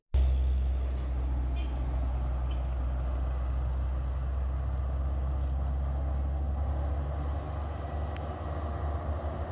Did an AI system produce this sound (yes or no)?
no